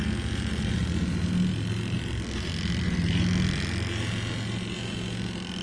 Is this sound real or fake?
real